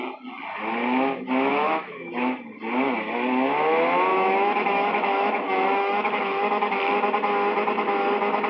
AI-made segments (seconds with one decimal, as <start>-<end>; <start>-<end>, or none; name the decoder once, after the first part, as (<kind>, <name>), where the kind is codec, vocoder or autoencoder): 1.5-2.1 (autoencoder, DAC-VAE); 4.1-6.8